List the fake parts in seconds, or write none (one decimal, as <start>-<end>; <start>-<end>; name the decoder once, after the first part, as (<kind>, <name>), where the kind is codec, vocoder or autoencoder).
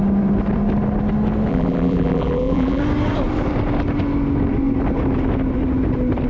1.5-2.8 (vocoder, BigVGAN v2)